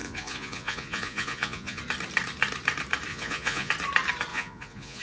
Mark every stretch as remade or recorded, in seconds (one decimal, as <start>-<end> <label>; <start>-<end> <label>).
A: 0.0-1.8 remade; 1.8-3.1 recorded; 3.1-3.7 remade; 3.7-4.3 recorded; 4.3-5.0 remade